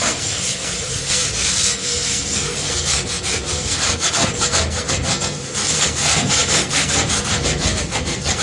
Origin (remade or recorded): remade